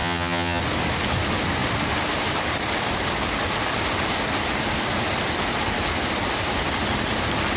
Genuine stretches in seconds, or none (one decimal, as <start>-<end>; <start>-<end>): 0.6-7.6